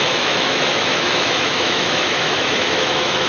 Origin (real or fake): fake